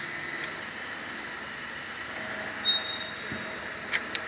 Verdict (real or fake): real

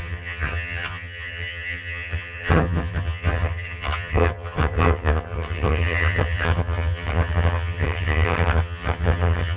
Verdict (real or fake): fake